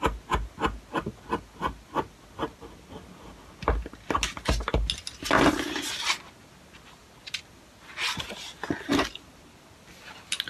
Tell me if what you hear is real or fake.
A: real